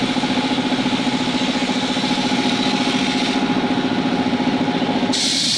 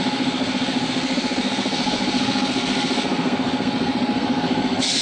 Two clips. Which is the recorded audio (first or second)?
first